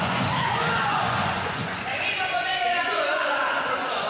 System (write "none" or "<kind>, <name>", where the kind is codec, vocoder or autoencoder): vocoder, Vocos